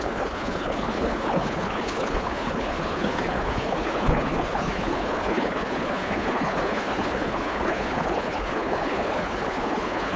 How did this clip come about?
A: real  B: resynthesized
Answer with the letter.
B